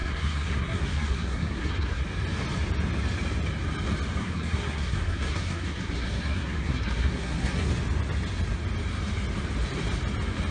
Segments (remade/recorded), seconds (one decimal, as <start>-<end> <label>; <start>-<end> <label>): 0.0-2.0 remade; 2.0-4.2 recorded; 4.2-7.7 remade; 7.7-10.5 recorded